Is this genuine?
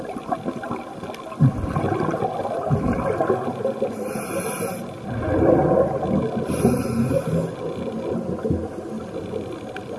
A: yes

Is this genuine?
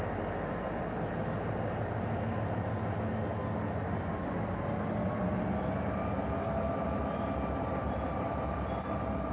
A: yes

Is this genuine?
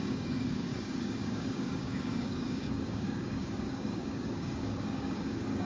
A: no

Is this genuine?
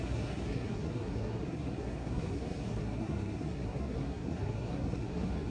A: no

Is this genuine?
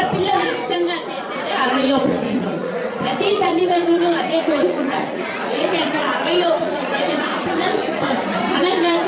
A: no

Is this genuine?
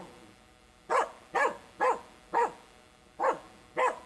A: yes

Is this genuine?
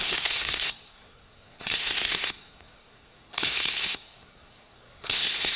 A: no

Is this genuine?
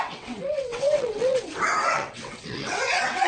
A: no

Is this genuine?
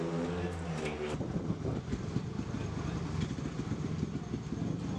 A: yes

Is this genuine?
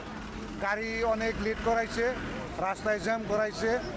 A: yes